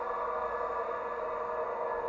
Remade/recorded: recorded